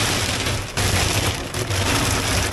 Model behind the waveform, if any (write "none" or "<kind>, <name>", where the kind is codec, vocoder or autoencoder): none